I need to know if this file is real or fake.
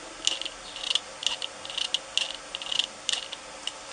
real